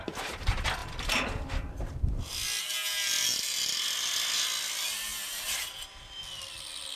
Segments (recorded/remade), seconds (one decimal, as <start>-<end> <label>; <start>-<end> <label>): 0.0-0.8 recorded; 0.8-2.6 remade; 2.6-5.1 recorded; 5.1-6.2 remade; 6.2-7.0 recorded